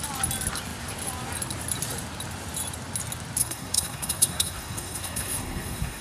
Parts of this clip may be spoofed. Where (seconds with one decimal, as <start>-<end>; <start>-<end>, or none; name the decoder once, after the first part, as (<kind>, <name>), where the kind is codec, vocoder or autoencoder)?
3.4-6.0 (codec, SNAC)